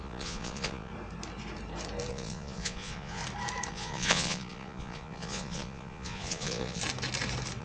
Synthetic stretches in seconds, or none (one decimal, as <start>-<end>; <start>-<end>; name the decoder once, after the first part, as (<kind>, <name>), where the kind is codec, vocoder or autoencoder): 0.0-0.9 (vocoder, Vocos); 2.1-3.2; 3.7-6.8